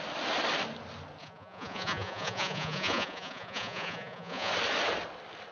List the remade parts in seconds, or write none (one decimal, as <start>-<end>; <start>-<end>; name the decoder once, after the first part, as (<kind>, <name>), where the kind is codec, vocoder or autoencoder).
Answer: 1.2-4.5 (vocoder, Vocos)